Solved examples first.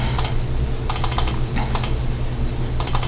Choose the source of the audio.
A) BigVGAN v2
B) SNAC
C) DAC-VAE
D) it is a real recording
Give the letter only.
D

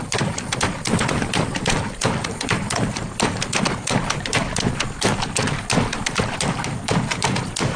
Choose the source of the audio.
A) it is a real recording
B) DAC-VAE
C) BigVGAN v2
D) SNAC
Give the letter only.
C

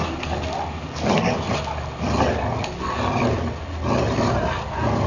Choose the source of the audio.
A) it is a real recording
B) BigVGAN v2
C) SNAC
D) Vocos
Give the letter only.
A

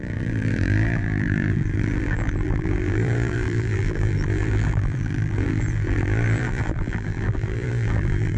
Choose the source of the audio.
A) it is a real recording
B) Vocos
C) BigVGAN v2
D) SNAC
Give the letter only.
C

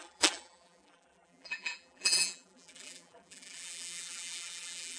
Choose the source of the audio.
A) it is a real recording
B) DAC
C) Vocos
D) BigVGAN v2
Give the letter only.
D